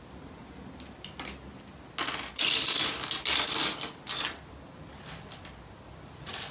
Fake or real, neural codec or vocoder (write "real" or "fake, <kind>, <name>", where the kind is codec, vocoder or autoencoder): real